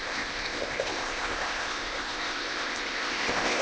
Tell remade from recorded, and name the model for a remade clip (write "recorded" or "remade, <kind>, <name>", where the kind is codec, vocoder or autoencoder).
remade, codec, ZipCodec